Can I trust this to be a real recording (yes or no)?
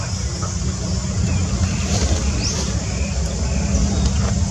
yes